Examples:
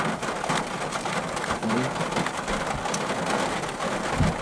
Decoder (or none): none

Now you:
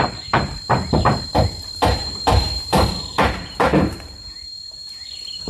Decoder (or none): vocoder, BigVGAN v2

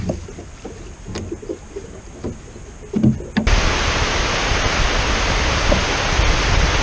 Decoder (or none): none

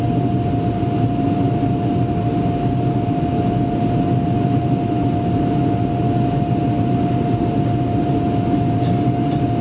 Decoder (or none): none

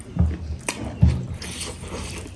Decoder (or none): none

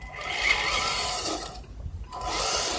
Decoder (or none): none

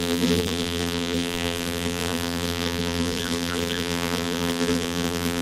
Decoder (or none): vocoder, BigVGAN v2